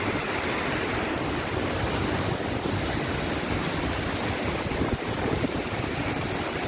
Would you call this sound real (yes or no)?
yes